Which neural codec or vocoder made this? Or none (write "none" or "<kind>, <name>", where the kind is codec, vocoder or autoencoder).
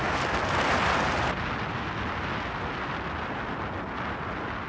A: none